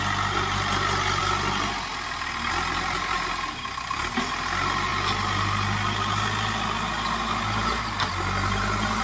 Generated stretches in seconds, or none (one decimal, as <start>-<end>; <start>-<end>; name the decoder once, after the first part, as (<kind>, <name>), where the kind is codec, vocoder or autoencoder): none